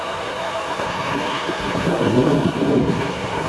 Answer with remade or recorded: remade